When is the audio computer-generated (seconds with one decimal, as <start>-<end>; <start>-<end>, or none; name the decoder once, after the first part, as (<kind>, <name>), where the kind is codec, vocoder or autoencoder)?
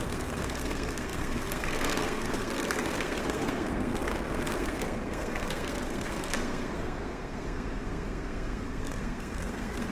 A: 0.0-9.9 (codec, SNAC)